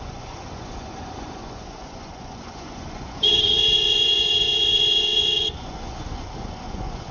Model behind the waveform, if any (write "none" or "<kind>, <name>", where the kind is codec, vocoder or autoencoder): vocoder, Vocos